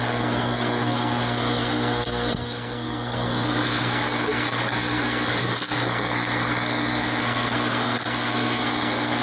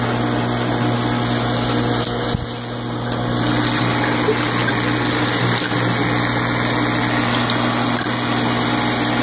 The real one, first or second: second